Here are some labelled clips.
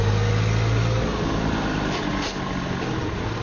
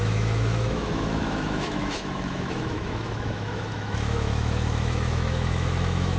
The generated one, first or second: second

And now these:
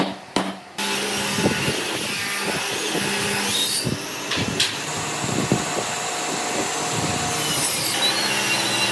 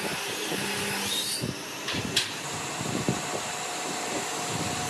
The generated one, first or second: second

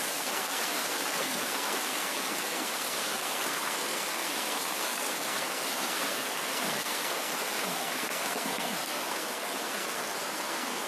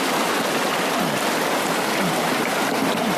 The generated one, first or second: first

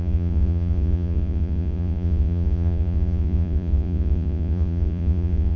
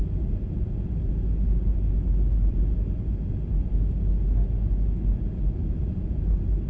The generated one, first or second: first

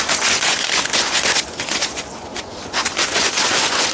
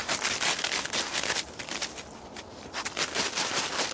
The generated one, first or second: first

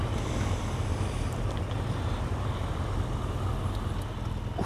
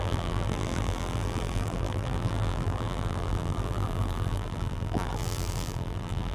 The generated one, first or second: second